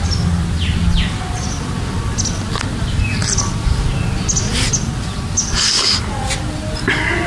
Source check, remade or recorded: recorded